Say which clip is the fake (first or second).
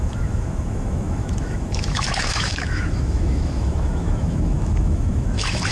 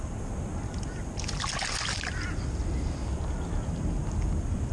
first